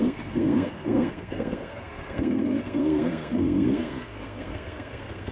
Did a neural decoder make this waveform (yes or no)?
yes